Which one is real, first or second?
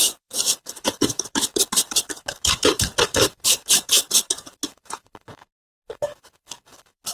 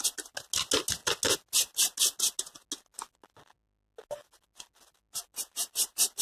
second